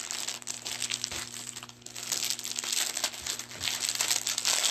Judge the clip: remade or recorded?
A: recorded